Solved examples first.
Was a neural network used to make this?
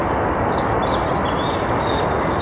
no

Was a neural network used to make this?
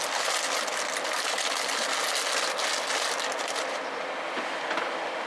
no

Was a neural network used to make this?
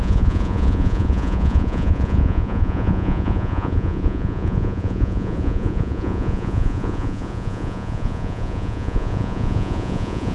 yes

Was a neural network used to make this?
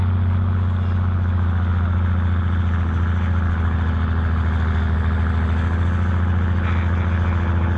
no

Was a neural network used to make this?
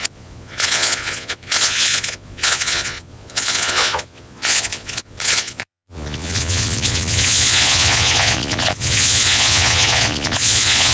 yes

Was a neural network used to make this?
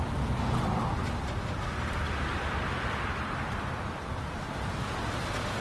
no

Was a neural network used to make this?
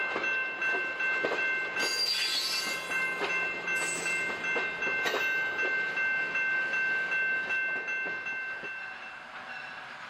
no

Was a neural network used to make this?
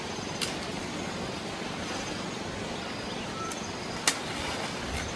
no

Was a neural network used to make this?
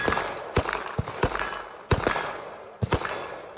no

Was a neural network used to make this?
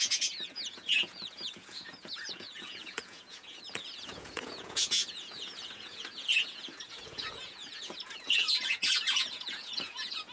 yes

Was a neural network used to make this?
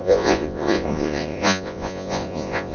yes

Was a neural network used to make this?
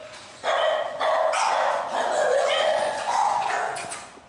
yes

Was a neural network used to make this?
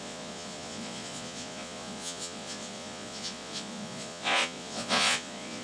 yes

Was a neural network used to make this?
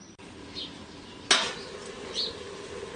no